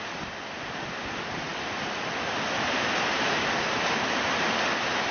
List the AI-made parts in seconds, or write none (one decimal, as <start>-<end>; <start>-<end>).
none